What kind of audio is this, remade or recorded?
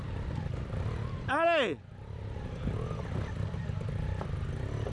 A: recorded